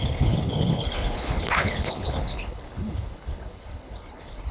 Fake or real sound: fake